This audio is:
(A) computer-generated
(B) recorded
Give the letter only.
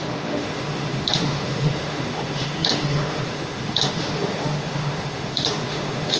A